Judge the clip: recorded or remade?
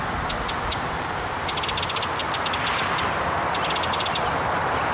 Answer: recorded